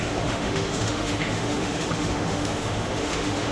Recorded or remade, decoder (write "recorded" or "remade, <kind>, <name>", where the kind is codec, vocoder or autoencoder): remade, autoencoder, DAC-VAE